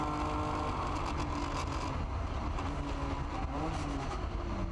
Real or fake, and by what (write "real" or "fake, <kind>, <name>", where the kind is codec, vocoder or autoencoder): real